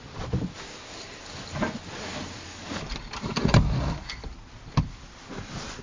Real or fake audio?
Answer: real